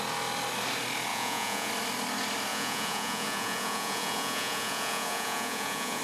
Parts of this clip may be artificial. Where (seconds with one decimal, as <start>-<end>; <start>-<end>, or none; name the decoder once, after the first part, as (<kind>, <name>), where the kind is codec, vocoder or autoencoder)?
1.1-1.7 (vocoder, Vocos); 2.5-6.0